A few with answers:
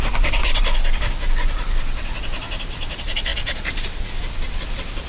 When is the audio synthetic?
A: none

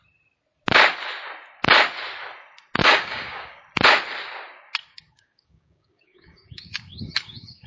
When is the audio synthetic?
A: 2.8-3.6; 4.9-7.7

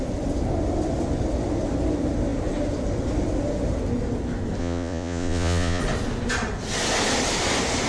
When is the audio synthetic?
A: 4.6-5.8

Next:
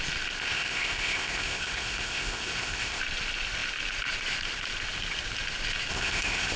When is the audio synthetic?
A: 0.4-3.0; 5.9-6.6

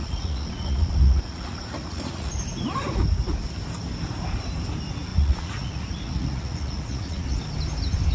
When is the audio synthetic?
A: 0.0-2.3; 5.1-7.4

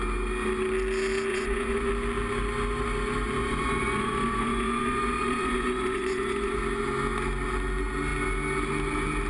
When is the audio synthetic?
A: 1.3-1.9; 3.4-6.6

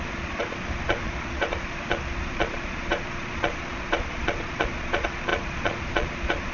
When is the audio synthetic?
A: 0.0-6.5